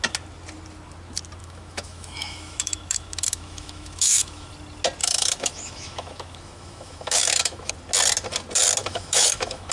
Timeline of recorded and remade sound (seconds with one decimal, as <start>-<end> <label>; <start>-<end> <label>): 0.0-1.4 recorded; 1.4-4.5 remade; 4.5-5.0 recorded; 5.0-7.7 remade; 7.7-8.8 recorded; 8.8-9.7 remade